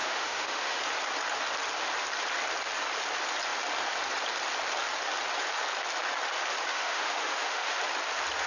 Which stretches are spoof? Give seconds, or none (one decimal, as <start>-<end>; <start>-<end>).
0.0-0.8; 6.7-7.8